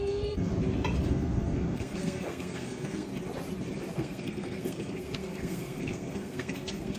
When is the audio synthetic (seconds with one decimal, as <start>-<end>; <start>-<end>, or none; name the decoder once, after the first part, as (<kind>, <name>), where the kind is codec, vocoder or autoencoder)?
0.0-0.5 (codec, SNAC); 1.1-3.1; 3.9-7.0